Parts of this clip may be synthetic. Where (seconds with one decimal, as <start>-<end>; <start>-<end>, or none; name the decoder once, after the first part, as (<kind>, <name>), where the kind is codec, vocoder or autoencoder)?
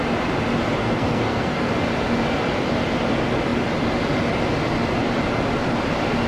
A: 0.8-1.7 (codec, SNAC)